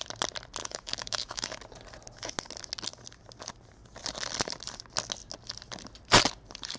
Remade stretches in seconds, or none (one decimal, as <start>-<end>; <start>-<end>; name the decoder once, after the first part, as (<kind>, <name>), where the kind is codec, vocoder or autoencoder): 0.6-1.6 (autoencoder, DAC-VAE)